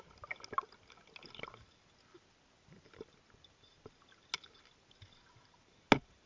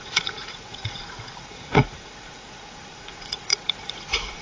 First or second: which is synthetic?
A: second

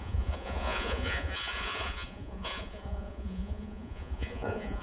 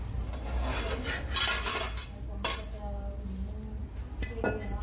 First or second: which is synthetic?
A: first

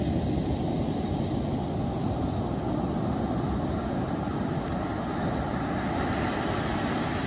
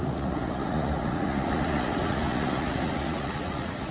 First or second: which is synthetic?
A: second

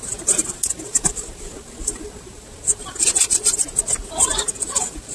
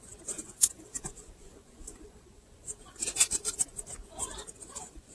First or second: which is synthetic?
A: second